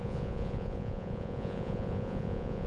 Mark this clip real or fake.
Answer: fake